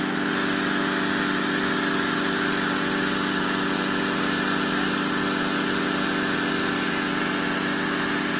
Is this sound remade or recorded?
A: recorded